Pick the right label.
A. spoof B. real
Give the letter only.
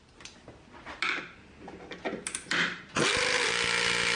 B